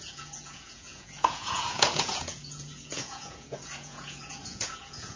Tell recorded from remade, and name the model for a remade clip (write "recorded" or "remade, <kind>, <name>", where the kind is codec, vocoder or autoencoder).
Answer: remade, vocoder, Vocos